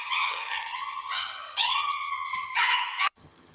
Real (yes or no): no